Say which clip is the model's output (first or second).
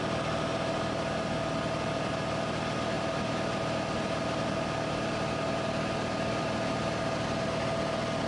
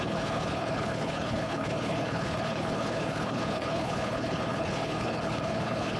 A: second